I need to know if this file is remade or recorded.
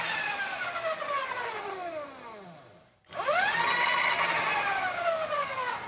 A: recorded